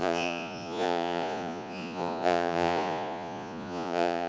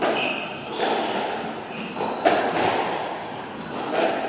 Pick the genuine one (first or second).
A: second